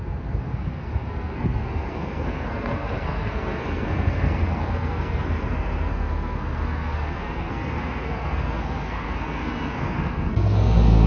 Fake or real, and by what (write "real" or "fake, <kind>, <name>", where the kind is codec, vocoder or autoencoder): fake, codec, SNAC